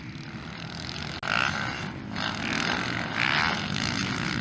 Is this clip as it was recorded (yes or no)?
yes